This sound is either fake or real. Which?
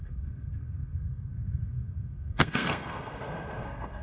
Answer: fake